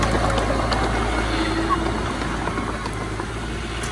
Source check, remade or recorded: recorded